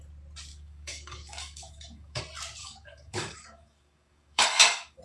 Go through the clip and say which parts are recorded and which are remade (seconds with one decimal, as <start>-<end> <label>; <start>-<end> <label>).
0.0-0.5 recorded; 0.5-2.2 remade; 2.2-2.6 recorded; 2.6-5.0 remade